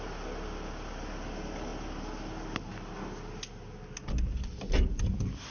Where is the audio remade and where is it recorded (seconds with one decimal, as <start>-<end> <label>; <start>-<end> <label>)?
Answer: 0.0-5.5 recorded